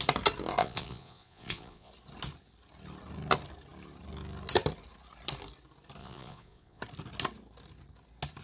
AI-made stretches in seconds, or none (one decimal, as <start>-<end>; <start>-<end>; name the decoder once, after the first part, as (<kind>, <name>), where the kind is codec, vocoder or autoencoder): 0.6-1.9 (vocoder, Vocos); 6.0-6.8